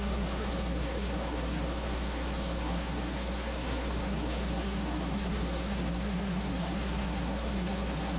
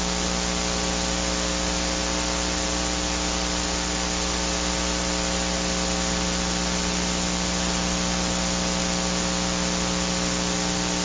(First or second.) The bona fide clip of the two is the second